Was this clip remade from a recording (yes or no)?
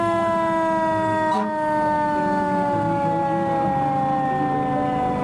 no